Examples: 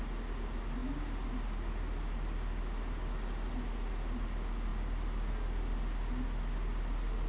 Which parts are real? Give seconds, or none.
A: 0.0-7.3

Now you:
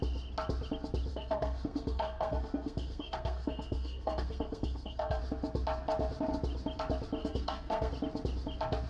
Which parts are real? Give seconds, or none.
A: 0.0-1.1; 5.2-7.2; 7.9-8.9

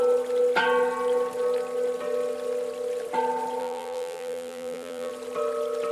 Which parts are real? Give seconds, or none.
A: 0.0-3.6; 5.1-5.9